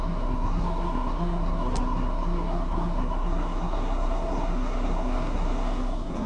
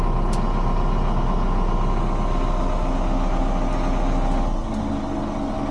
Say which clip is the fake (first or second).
first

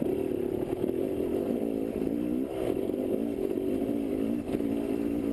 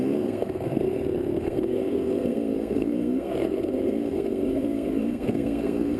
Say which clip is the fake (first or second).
second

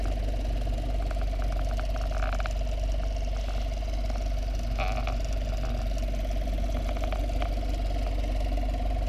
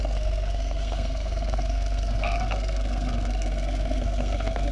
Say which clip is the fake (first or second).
second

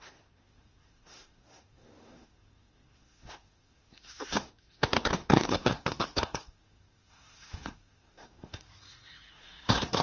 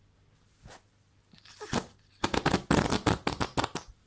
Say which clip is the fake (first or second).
first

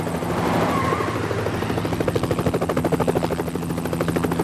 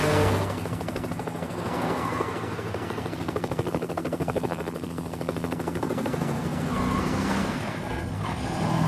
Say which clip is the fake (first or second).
second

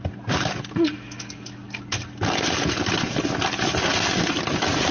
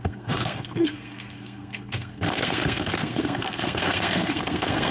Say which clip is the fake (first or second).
second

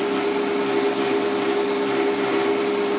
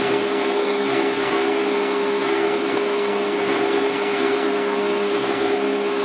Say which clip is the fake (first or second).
second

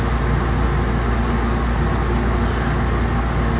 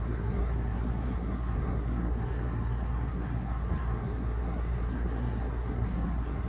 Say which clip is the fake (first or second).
second